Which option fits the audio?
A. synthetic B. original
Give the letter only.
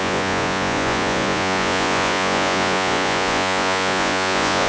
A